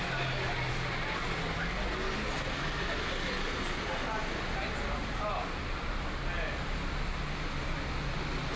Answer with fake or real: real